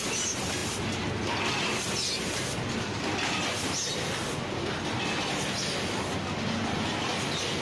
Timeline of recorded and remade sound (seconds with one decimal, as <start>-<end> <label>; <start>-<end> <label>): 0.0-7.6 recorded